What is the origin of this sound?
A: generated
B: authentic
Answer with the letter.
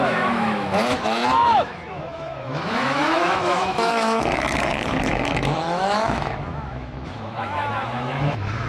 A